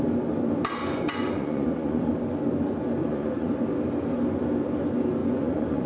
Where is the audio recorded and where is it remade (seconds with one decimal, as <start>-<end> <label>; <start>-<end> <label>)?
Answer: 0.0-0.9 recorded; 0.9-2.1 remade; 2.1-3.0 recorded; 3.0-3.5 remade; 3.5-5.2 recorded; 5.2-5.9 remade